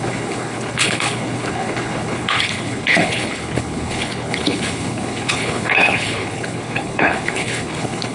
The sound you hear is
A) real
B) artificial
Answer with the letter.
B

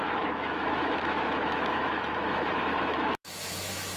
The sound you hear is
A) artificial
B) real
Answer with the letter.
A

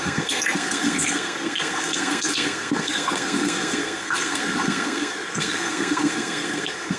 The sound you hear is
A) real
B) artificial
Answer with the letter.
B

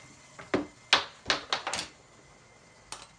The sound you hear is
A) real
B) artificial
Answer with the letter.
A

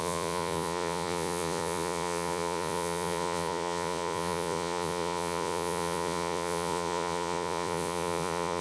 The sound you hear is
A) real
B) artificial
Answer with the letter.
B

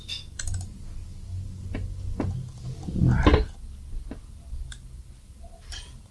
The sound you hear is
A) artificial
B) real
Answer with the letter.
B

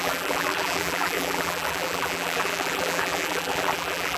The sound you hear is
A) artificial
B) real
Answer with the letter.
A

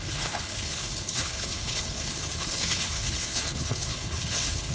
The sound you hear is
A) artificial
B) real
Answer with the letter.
A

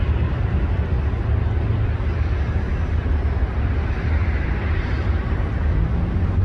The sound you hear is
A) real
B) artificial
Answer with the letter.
A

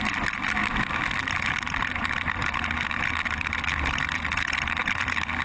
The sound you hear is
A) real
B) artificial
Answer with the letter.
A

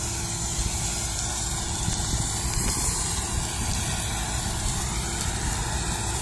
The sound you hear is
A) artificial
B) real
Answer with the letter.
B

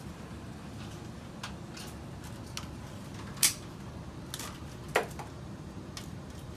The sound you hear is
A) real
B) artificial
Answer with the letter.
A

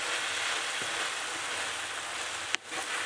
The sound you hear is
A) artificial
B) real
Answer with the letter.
B